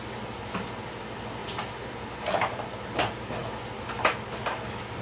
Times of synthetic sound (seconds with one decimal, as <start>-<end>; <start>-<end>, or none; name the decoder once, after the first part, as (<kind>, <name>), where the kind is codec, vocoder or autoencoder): none